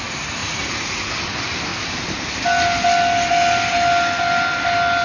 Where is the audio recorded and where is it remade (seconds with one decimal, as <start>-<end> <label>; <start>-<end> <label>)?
0.0-0.4 recorded; 0.4-1.1 remade; 1.1-5.0 recorded